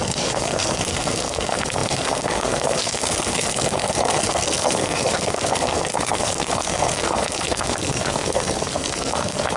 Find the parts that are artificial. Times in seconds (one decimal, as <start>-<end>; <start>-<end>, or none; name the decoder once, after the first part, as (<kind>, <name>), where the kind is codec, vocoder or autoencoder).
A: 0.0-9.6 (codec, SNAC)